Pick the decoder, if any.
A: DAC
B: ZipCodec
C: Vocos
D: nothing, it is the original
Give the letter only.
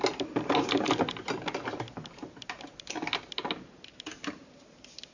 D